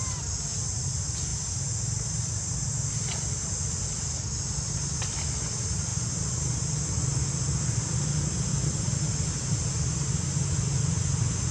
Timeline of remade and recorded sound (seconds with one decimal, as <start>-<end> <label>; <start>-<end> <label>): 0.0-11.5 recorded